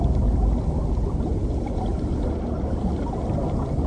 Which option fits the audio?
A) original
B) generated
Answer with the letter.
A